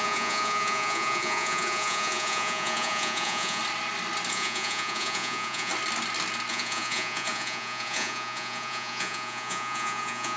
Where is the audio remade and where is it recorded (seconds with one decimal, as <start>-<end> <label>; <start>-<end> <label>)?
0.0-3.6 remade; 3.6-4.3 recorded; 4.3-5.7 remade; 5.7-6.5 recorded; 6.5-10.4 remade